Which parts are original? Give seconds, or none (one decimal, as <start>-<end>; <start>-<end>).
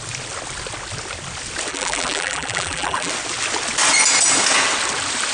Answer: 0.0-1.7; 3.1-5.3